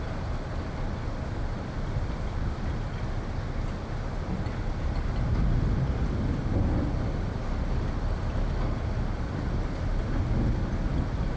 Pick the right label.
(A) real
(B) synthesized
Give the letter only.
A